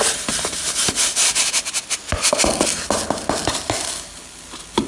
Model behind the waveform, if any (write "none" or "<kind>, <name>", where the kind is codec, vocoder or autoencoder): none